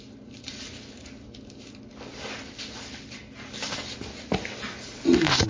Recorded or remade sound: recorded